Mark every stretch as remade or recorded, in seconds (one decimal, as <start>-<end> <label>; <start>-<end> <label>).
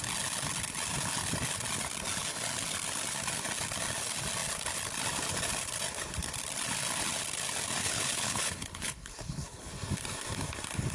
0.0-7.8 recorded; 7.8-9.7 remade; 9.7-10.9 recorded